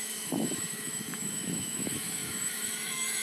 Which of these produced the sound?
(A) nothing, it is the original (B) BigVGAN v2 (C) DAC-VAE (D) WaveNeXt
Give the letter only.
C